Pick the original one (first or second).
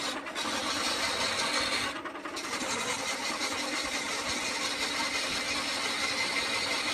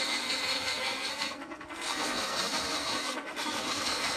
first